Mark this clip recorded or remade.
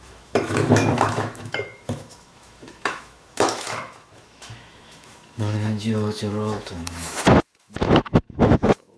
remade